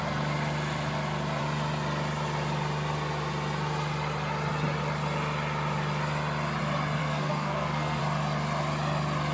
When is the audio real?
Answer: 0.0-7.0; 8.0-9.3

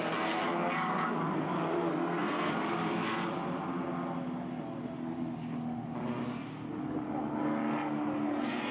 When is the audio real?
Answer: 0.0-1.9; 2.5-8.7

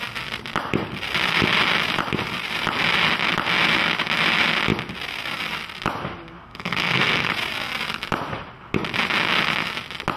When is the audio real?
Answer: 0.0-6.5; 7.3-10.2